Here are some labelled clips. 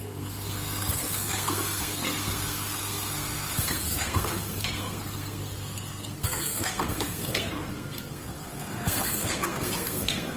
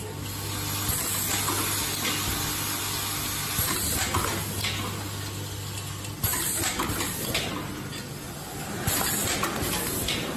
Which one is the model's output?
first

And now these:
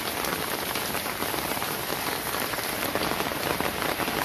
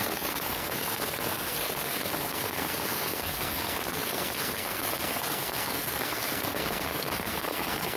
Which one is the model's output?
second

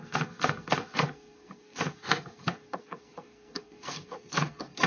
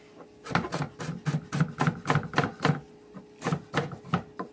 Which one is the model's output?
first